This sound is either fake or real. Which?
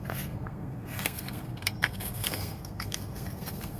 fake